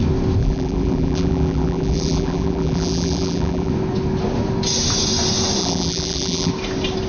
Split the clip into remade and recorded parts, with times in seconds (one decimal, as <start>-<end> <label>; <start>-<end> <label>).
0.0-0.4 recorded; 0.4-3.7 remade; 3.7-5.6 recorded; 5.6-6.5 remade; 6.5-7.1 recorded